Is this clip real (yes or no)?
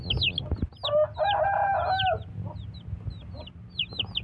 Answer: yes